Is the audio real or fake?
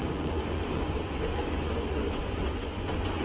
fake